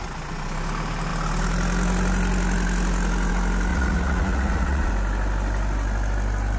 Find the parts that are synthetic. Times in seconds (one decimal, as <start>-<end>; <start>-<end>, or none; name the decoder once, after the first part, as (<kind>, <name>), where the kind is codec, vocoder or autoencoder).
3.7-4.9 (vocoder, Vocos)